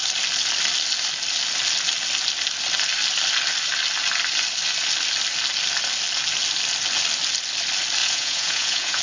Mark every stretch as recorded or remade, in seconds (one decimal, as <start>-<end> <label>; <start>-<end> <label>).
0.0-8.0 recorded; 8.0-9.0 remade